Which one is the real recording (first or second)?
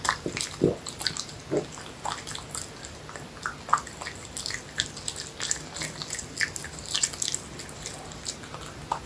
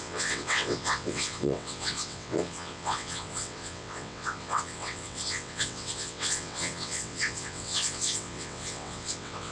first